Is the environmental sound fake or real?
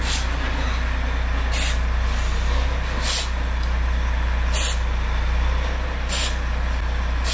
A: real